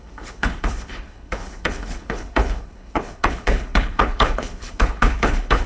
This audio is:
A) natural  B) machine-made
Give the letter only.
B